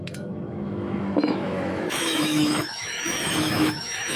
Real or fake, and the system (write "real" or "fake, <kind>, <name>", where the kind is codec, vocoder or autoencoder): fake, autoencoder, DAC-VAE